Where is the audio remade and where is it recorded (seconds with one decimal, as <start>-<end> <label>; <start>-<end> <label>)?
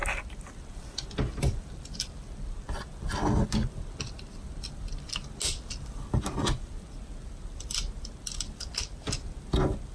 0.0-9.9 recorded